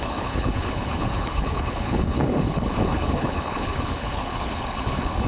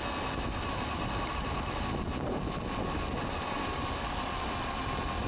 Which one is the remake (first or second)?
first